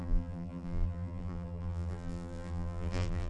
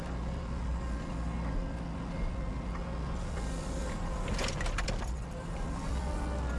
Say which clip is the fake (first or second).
first